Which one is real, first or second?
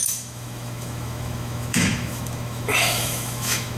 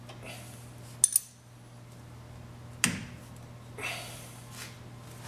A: second